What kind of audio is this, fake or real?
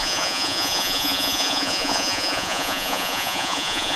fake